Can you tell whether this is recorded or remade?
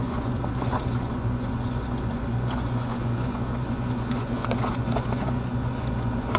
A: remade